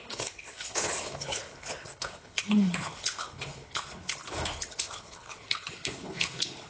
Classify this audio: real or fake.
fake